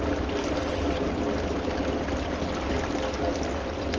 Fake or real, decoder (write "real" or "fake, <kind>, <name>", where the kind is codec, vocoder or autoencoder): real